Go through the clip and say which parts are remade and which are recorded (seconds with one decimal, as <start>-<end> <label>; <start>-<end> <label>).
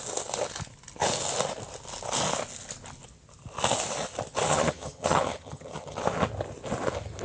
0.0-4.5 recorded; 4.5-6.0 remade; 6.0-7.2 recorded